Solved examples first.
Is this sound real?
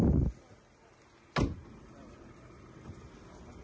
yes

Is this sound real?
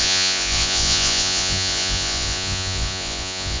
no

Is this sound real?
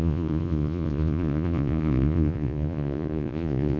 no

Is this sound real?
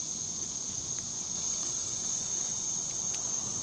no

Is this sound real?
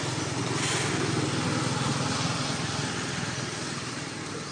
yes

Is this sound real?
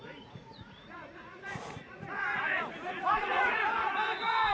no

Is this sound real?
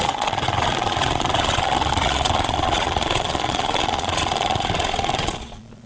no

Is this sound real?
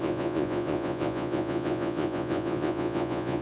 no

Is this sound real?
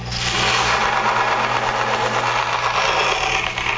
yes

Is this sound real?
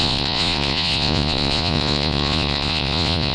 no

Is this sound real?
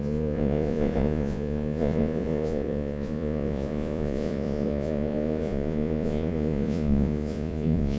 no